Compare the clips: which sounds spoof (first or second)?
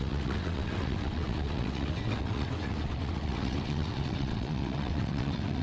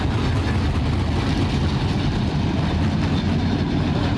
first